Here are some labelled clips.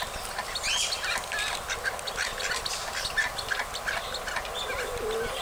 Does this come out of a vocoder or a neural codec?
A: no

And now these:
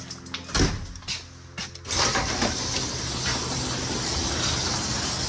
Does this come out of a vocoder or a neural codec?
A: no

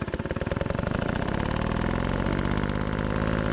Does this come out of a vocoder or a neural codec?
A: no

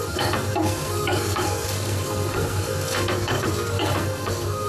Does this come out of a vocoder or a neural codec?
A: yes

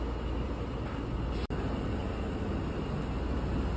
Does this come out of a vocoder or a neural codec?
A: no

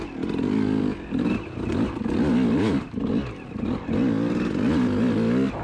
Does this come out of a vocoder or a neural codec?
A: no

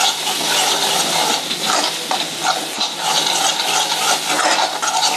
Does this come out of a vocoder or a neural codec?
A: no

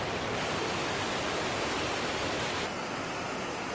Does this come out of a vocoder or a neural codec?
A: no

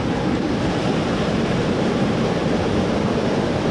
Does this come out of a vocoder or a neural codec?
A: yes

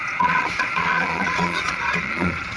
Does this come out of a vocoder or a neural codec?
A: yes